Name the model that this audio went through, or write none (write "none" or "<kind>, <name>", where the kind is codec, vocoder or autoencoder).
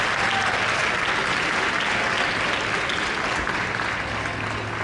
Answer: none